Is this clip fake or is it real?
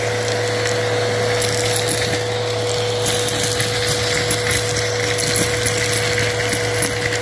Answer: real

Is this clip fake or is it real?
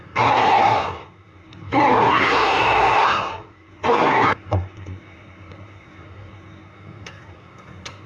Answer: fake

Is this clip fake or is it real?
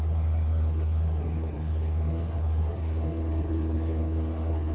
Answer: fake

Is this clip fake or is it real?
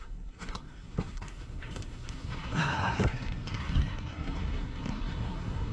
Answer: fake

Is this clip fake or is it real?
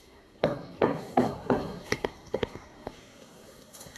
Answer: fake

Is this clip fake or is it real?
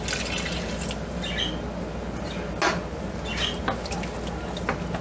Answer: real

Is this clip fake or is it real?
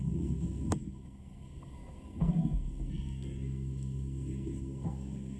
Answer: fake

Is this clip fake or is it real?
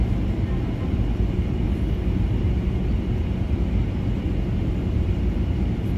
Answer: real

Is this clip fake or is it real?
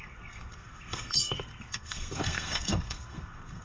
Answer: fake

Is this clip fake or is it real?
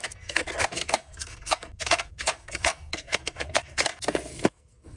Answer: fake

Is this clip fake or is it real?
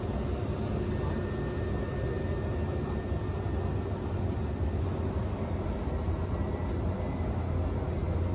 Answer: real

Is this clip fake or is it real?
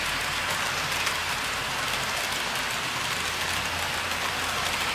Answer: real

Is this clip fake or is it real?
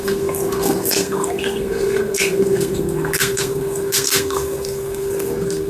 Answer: fake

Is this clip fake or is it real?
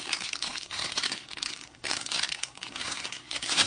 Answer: fake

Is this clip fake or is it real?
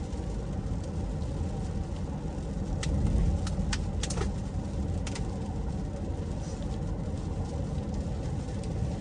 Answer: real